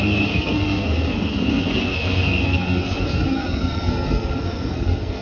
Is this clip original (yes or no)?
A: no